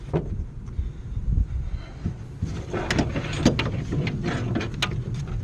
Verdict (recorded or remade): recorded